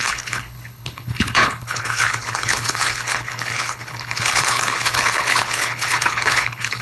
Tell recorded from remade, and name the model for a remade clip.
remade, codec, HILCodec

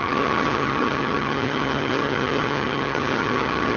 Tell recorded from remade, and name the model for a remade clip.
remade, vocoder, HiFi-GAN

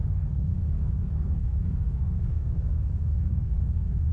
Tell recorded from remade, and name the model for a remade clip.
remade, codec, SNAC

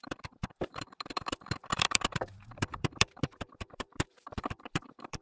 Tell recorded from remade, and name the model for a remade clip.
remade, vocoder, BigVGAN v2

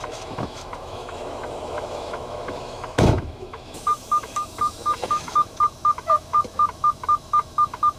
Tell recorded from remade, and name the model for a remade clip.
remade, autoencoder, DAC-VAE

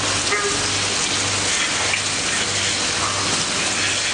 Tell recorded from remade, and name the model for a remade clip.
recorded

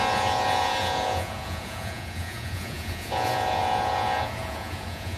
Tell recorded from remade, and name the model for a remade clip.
remade, vocoder, Vocos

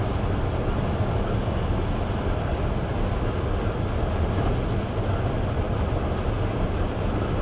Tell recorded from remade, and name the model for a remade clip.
recorded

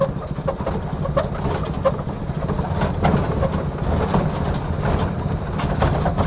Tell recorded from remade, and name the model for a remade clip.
recorded